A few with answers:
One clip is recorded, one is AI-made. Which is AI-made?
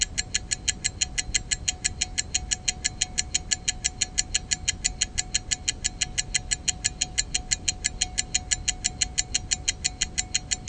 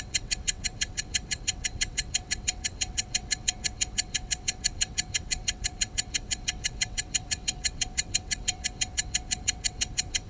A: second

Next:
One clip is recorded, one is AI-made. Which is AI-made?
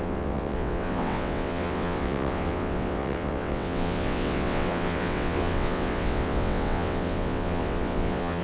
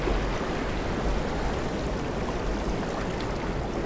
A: first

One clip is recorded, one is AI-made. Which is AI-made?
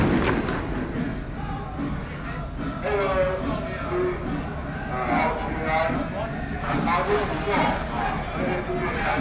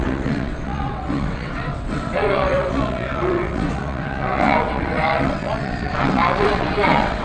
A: second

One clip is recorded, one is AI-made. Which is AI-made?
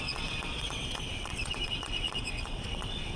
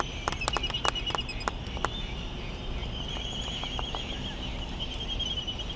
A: first